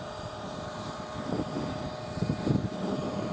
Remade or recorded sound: remade